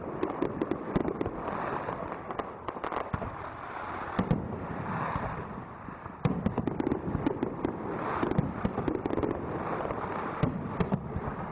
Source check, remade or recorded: recorded